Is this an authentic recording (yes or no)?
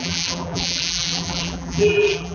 no